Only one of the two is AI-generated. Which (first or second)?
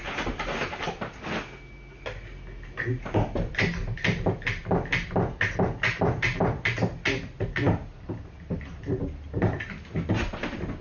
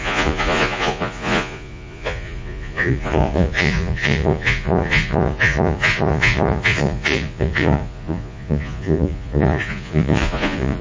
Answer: second